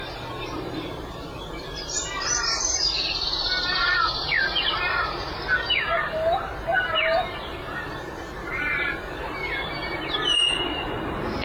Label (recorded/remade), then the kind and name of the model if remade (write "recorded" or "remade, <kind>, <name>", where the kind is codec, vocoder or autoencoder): remade, vocoder, BigVGAN v2